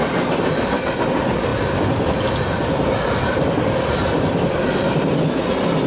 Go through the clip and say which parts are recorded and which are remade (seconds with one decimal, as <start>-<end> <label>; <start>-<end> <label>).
0.0-5.9 recorded